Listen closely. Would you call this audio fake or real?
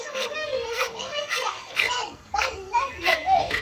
fake